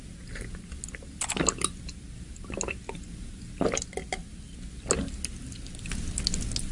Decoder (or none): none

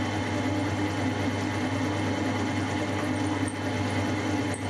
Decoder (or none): none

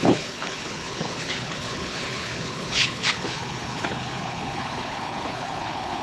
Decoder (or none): codec, HILCodec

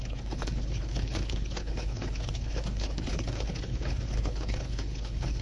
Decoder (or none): codec, HILCodec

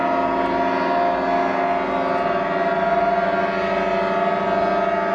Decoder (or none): none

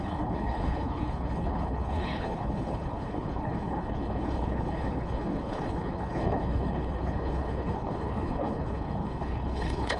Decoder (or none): codec, HILCodec